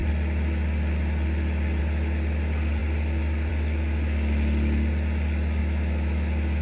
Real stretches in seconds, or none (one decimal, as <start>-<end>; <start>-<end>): 0.0-5.6